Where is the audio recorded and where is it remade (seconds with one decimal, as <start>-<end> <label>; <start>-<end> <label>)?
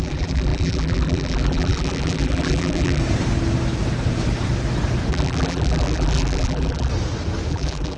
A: 0.0-3.0 remade; 3.0-5.1 recorded; 5.1-6.9 remade; 6.9-7.5 recorded; 7.5-8.0 remade